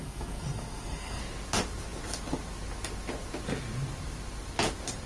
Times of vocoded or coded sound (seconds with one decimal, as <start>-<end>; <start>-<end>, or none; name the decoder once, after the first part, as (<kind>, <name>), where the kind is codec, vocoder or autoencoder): 0.0-1.2 (codec, SNAC)